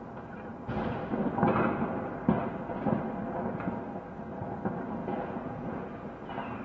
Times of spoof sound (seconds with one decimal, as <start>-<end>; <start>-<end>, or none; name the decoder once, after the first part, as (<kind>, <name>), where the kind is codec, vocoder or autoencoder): 5.0-5.8 (vocoder, Vocos)